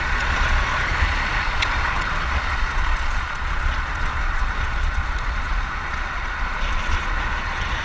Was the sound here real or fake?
fake